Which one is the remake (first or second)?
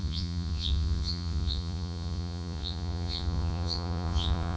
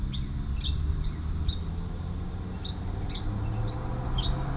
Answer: first